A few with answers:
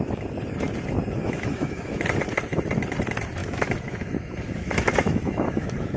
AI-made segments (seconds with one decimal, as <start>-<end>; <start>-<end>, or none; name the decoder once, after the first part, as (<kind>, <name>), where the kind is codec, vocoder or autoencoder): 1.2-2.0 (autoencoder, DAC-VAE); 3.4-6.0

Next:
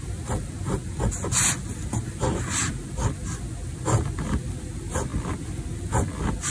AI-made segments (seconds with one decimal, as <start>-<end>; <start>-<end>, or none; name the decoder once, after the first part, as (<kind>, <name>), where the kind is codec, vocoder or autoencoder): none

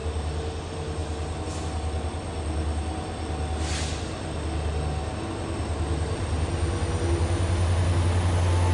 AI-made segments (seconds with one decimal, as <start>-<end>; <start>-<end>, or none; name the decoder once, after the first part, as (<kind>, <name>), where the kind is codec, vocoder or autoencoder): none

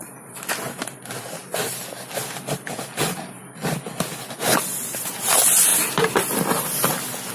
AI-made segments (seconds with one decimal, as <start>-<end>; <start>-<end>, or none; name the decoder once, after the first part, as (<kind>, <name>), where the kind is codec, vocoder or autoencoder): none

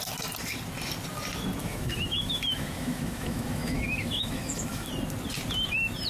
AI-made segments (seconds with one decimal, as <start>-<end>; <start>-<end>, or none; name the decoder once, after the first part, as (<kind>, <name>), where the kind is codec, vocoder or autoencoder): 1.6-4.9 (autoencoder, DAC-VAE)